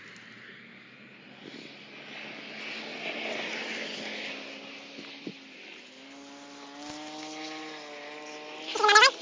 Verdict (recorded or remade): recorded